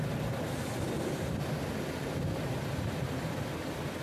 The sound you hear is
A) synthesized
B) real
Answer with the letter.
B